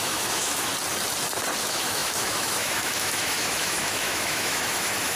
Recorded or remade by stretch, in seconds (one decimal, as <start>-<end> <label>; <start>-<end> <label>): 0.0-0.7 remade; 0.7-1.6 recorded; 1.6-5.2 remade